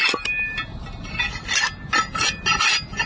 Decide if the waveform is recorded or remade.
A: recorded